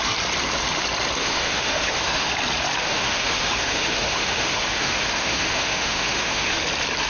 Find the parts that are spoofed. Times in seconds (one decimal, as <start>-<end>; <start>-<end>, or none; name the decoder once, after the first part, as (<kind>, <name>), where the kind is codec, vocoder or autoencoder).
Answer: 1.2-2.3 (autoencoder, DAC-VAE); 2.8-6.6